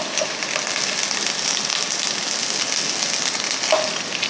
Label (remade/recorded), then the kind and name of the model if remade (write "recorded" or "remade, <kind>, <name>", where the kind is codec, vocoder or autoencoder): recorded